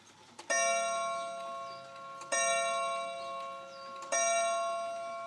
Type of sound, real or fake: real